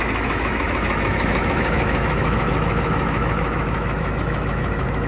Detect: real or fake fake